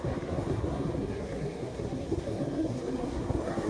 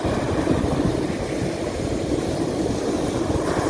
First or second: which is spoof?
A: first